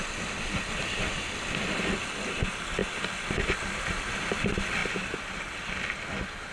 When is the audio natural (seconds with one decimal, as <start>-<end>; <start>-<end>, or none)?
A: 0.0-6.5